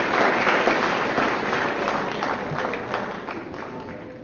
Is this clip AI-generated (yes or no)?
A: no